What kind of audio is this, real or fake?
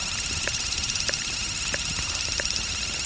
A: fake